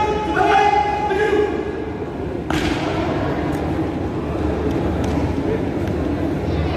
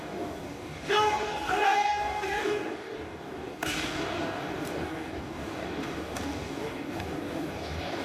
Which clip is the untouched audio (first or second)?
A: first